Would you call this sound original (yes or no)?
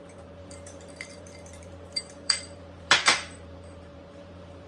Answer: no